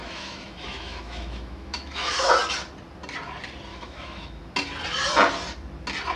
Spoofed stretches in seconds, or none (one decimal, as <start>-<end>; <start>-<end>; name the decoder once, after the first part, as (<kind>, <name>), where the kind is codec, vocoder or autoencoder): 0.0-2.3 (autoencoder, DAC-VAE); 3.7-4.4